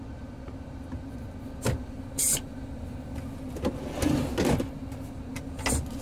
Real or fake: real